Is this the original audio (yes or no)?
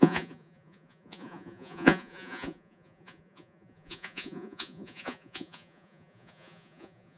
no